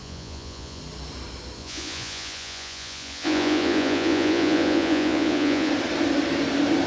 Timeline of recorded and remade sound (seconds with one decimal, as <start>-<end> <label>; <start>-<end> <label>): 0.0-0.8 remade; 0.8-1.6 recorded; 1.6-5.7 remade; 5.7-6.9 recorded

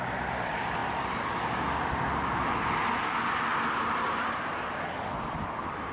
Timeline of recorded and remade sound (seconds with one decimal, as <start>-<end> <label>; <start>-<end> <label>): 0.0-5.9 recorded

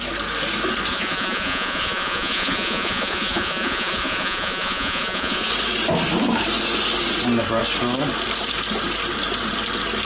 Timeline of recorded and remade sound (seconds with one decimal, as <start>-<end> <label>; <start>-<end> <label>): 0.0-0.9 recorded; 0.9-5.5 remade; 5.5-10.0 recorded

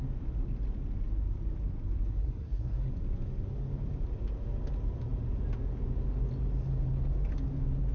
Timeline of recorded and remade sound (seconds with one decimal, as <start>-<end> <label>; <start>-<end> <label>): 0.0-2.2 recorded; 2.2-2.9 remade; 2.9-7.9 recorded

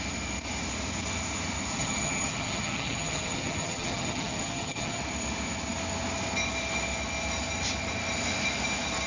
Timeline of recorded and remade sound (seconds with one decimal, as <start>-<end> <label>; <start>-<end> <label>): 0.0-1.7 recorded; 1.7-5.0 remade; 5.0-9.1 recorded

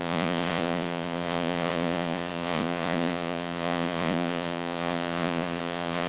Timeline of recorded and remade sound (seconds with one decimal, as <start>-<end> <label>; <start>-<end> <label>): 0.0-6.1 remade